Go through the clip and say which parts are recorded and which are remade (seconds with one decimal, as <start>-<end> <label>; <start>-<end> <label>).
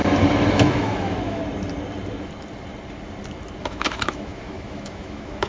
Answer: 0.0-0.5 recorded; 0.5-1.4 remade; 1.4-3.6 recorded; 3.6-5.5 remade